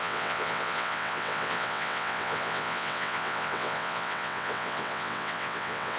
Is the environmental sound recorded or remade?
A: remade